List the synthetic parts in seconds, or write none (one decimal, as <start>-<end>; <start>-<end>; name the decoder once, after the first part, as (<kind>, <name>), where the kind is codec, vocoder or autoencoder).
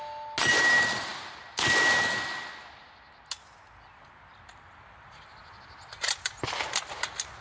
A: 5.4-6.9 (vocoder, BigVGAN v2)